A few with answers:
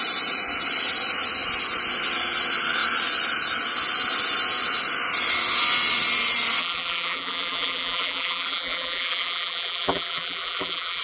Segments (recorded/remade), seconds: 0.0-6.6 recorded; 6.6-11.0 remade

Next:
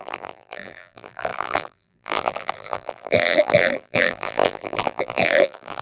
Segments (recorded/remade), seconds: 0.0-5.8 remade

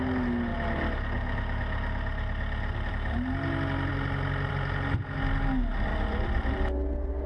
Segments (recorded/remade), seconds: 0.0-3.9 recorded; 3.9-4.5 remade; 4.5-5.9 recorded; 5.9-6.5 remade; 6.5-7.3 recorded

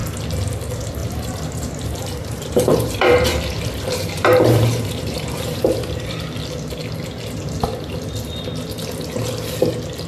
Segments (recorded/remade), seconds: 0.0-1.0 recorded; 1.0-6.2 remade; 6.2-10.1 recorded